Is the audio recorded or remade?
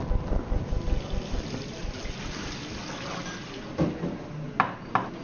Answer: recorded